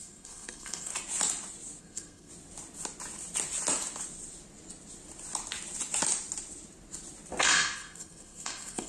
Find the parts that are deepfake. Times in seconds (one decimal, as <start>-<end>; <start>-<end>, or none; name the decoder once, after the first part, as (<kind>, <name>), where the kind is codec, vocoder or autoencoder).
0.0-0.9 (codec, SNAC); 1.8-2.3; 7.4-8.9